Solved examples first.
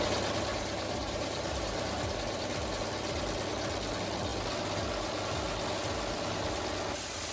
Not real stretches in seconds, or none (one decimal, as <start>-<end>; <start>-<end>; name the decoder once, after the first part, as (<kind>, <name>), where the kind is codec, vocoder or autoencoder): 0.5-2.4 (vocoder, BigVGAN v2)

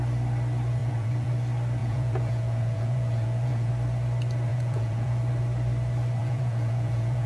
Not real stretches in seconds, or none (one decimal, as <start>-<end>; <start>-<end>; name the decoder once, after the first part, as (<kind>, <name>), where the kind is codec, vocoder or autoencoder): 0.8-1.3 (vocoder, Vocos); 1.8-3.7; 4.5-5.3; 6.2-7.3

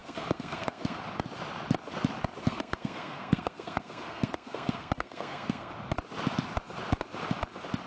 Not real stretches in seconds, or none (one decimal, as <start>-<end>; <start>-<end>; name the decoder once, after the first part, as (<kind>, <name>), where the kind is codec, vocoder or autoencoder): 0.0-1.0 (codec, SNAC); 2.4-5.7